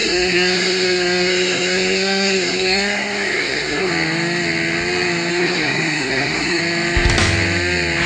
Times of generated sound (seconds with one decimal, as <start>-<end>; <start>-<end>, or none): 0.0-3.9; 5.3-6.6